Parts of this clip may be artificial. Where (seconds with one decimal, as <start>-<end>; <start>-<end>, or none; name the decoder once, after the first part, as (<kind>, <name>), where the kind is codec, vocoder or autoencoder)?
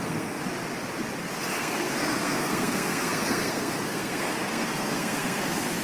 0.0-0.4 (codec, SNAC); 1.6-5.8